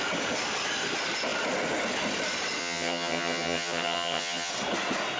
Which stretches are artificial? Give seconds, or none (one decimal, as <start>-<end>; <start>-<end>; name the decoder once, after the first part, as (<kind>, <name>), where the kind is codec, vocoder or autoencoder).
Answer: 2.6-4.5 (vocoder, HiFi-GAN)